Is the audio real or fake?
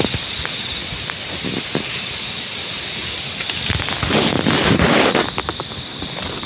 real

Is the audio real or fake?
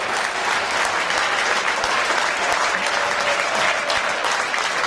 real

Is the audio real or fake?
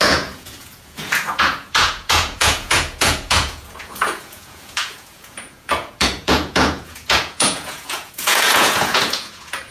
fake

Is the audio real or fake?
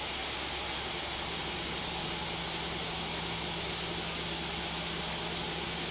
real